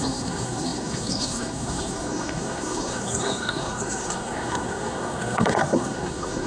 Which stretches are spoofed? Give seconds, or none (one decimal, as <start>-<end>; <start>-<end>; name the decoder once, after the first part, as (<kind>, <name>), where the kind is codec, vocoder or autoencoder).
0.0-6.5 (codec, SNAC)

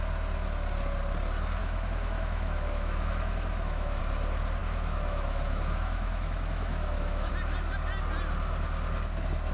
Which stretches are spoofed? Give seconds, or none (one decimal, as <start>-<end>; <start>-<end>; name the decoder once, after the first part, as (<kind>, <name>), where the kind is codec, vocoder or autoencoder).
1.6-4.0 (autoencoder, DAC-VAE); 4.6-7.3

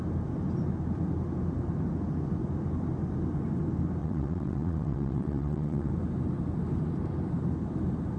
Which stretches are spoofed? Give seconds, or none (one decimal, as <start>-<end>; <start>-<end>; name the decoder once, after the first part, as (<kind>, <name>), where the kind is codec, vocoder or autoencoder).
4.0-5.9 (vocoder, WaveNeXt)

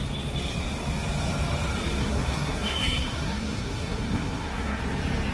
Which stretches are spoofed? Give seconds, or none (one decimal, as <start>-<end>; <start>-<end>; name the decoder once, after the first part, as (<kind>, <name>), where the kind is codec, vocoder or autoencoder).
2.0-4.8 (codec, SNAC)

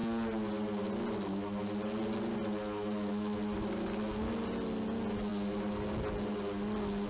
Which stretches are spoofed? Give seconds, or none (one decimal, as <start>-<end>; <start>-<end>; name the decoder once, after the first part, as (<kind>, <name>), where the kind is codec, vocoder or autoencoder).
none